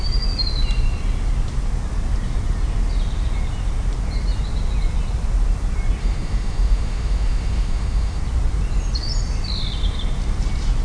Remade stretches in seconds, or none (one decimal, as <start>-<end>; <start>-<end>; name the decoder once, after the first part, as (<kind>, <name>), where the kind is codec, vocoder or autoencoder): 6.0-8.2 (autoencoder, DAC-VAE)

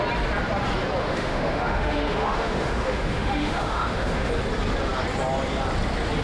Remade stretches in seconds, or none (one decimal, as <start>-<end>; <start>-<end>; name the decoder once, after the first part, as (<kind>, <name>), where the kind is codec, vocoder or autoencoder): 1.0-4.3 (autoencoder, DAC-VAE)

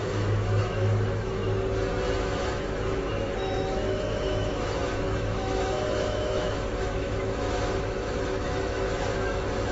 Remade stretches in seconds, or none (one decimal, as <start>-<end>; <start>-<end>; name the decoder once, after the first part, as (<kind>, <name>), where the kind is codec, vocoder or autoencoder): 0.0-1.4 (autoencoder, DAC-VAE); 2.2-9.7

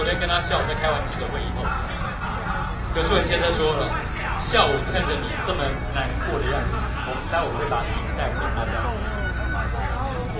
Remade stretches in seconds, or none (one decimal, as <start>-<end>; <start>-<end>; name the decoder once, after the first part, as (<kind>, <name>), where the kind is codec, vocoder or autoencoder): 6.1-6.8 (autoencoder, DAC-VAE)

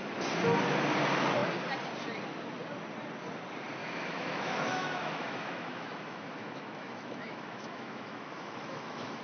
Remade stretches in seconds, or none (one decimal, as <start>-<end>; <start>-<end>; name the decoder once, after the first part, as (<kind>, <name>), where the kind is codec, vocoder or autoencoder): 3.8-9.2 (autoencoder, DAC-VAE)

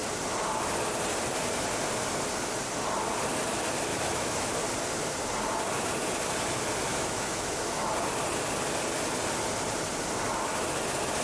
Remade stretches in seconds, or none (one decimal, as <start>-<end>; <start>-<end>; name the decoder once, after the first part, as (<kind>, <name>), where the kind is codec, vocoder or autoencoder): 3.9-4.5 (autoencoder, DAC-VAE); 6.9-7.9